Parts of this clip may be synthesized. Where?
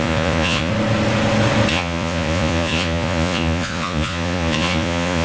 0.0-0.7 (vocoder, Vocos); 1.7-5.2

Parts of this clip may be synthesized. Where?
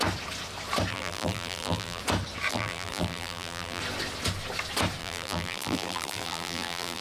0.9-2.0 (vocoder, BigVGAN v2); 2.5-3.8; 5.0-7.0